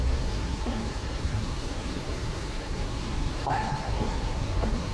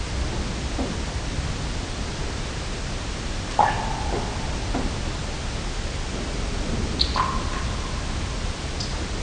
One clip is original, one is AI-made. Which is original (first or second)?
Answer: second